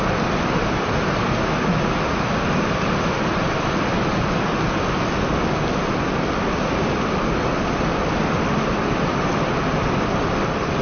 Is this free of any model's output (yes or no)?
yes